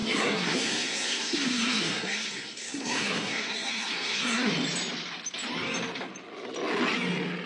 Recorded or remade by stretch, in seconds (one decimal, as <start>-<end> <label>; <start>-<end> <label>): 0.0-4.5 remade; 4.5-7.5 recorded